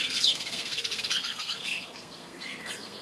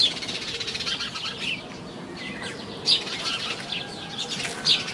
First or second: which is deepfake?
first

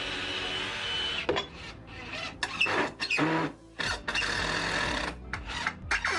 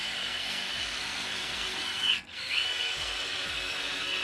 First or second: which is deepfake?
second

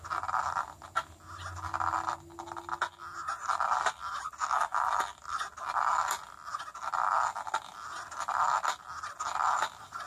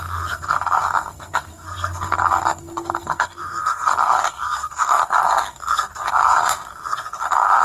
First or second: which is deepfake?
second